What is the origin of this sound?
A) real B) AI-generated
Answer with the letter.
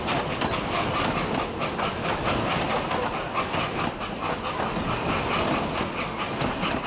A